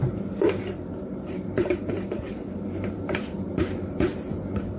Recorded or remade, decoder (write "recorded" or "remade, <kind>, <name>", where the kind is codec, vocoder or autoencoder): remade, vocoder, BigVGAN v2